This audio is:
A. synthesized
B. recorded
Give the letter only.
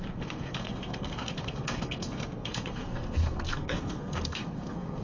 A